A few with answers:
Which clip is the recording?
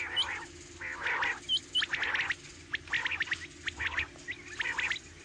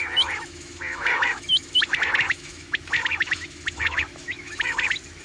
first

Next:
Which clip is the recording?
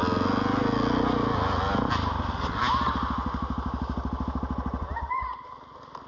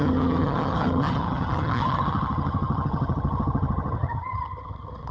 first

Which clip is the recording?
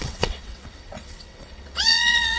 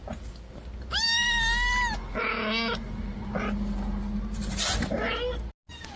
second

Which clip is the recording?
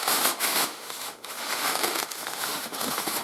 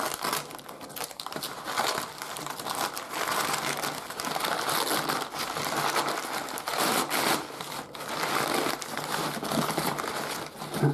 second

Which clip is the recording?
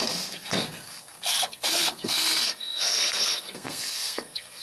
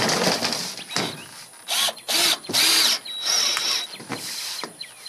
second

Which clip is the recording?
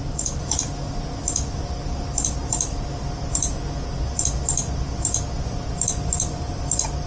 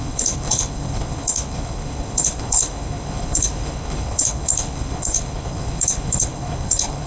first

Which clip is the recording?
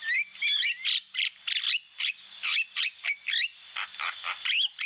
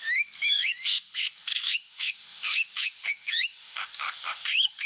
first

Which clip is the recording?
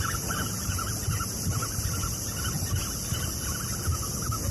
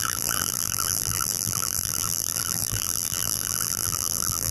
first